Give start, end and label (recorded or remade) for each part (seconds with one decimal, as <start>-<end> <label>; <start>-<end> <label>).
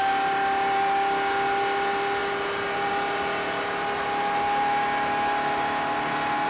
0.0-6.5 recorded